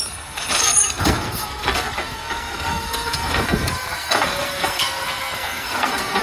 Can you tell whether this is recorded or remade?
remade